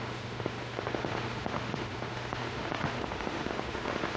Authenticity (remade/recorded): remade